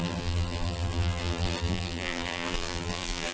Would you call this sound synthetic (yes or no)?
yes